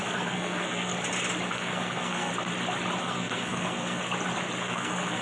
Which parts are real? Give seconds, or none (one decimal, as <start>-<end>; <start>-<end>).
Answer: 0.9-1.5; 2.3-3.0; 4.0-4.6